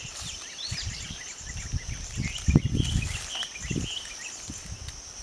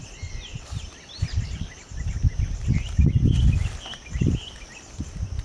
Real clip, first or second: second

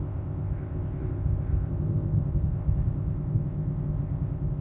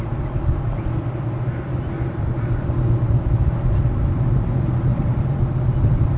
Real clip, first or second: second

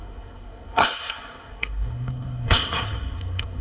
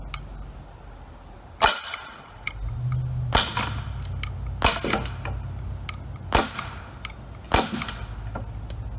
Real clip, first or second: second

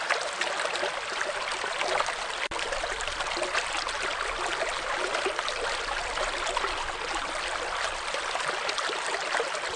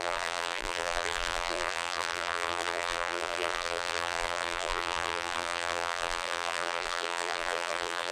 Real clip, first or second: first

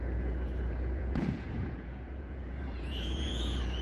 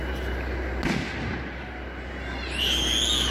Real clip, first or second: second